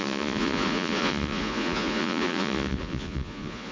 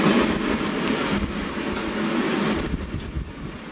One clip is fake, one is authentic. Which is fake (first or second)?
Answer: first